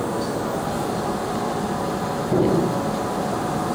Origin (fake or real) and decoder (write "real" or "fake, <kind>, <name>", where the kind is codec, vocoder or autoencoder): real